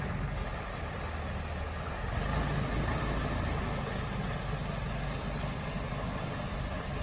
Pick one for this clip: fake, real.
real